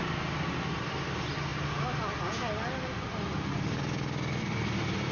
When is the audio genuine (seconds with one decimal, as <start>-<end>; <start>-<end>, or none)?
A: 0.0-5.1

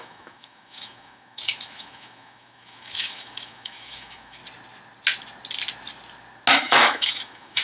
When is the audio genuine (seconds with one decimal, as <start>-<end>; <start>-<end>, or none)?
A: 4.4-6.5

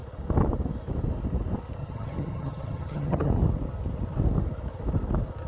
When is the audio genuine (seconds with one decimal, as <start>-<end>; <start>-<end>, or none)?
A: 0.0-1.8; 3.3-5.5

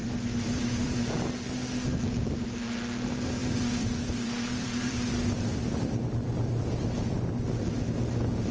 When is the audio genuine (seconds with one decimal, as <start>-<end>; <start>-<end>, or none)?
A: 1.1-3.4; 7.3-8.5

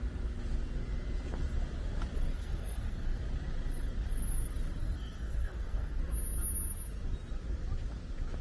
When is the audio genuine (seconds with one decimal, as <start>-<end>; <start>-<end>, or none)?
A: 0.0-2.3; 3.2-4.8; 6.0-8.4

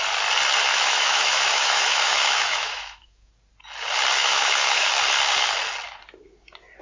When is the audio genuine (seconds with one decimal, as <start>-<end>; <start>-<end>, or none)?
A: 0.0-0.7; 3.3-4.2; 4.9-6.8

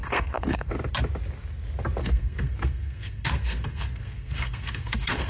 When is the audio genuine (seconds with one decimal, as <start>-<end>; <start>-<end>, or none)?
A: 0.7-2.0